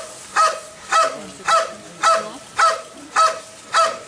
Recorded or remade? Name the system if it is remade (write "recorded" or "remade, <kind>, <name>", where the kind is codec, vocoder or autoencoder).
recorded